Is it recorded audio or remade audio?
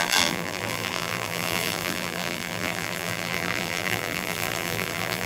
remade